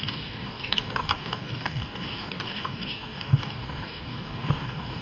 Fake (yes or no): yes